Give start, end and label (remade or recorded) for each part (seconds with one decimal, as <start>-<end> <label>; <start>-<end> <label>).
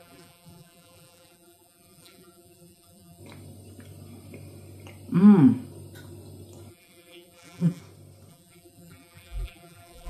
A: 0.0-3.2 remade; 3.2-6.7 recorded; 6.7-7.8 remade; 7.8-8.3 recorded; 8.3-10.1 remade